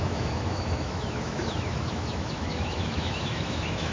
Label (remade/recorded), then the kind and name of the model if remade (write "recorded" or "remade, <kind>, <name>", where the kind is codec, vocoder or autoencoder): remade, autoencoder, DAC-VAE